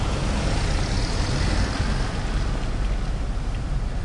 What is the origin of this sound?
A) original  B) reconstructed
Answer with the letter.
B